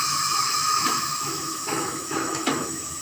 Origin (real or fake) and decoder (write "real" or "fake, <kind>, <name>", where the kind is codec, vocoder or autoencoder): fake, autoencoder, DAC-VAE